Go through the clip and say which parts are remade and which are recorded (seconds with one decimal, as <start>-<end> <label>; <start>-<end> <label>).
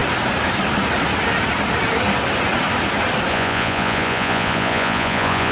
0.0-3.3 recorded; 3.3-5.5 remade